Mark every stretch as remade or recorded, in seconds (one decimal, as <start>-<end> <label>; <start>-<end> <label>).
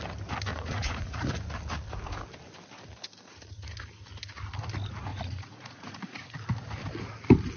0.0-0.5 recorded; 0.5-1.3 remade; 1.3-5.1 recorded; 5.1-6.3 remade; 6.3-7.6 recorded